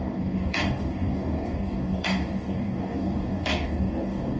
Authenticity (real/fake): fake